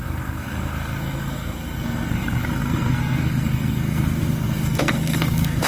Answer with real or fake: fake